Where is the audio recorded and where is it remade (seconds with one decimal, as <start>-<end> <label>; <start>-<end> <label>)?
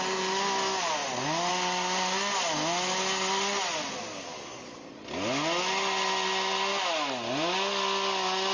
0.0-8.5 recorded